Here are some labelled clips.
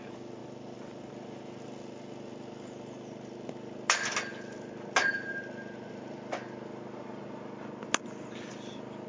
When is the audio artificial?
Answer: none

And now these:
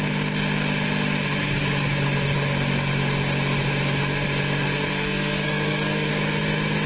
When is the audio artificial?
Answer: 4.9-6.1 (codec, SNAC)

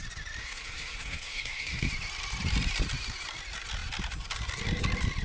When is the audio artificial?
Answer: 0.4-1.9 (codec, SNAC)

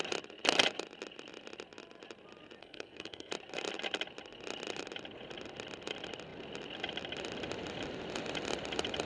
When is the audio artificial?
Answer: 2.6-3.3 (codec, SNAC)

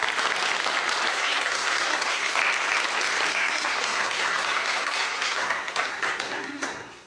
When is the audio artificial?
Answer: 1.1-2.4 (codec, SNAC); 3.3-7.1

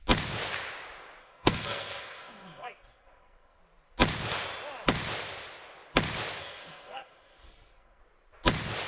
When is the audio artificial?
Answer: 1.2-3.6 (codec, SNAC); 6.4-8.0

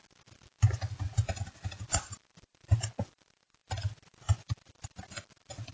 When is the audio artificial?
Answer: none

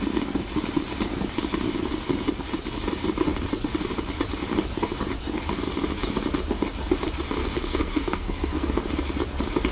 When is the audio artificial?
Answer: 7.4-8.8 (codec, SNAC)